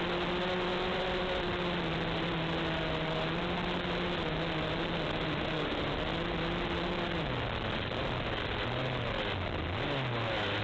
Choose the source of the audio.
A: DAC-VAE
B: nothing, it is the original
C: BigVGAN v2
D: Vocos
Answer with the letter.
B